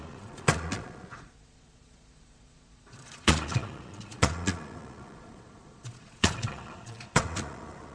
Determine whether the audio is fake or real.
fake